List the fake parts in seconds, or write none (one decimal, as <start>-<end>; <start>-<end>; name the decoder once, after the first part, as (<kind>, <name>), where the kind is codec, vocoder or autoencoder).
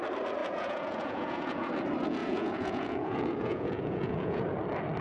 0.4-1.7 (vocoder, Vocos); 2.2-4.4